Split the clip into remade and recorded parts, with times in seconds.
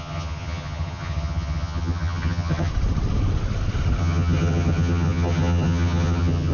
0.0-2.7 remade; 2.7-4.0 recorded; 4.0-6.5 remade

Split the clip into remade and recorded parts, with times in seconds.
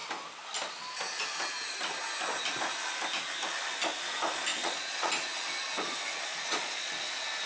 0.0-4.5 recorded; 4.5-5.1 remade; 5.1-6.3 recorded; 6.3-6.9 remade; 6.9-7.5 recorded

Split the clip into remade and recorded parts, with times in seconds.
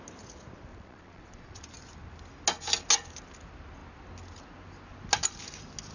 0.0-0.7 recorded; 0.7-1.6 remade; 1.6-5.9 recorded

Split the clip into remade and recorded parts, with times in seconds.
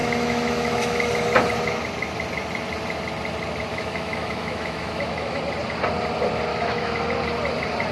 0.0-1.1 remade; 1.1-3.7 recorded; 3.7-5.4 remade; 5.4-6.5 recorded; 6.5-7.1 remade; 7.1-7.9 recorded